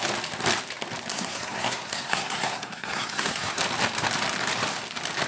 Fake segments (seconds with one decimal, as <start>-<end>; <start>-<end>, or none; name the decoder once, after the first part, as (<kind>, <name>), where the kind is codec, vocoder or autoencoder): 1.1-3.6 (codec, SNAC)